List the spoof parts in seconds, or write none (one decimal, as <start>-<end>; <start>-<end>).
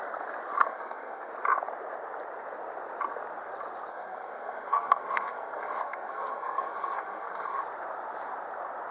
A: 0.6-1.3; 3.9-7.6